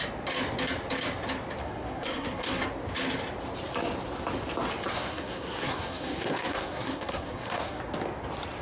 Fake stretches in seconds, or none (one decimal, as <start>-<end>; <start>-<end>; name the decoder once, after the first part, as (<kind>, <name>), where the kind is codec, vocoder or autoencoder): 1.6-2.6 (codec, SNAC); 4.9-7.8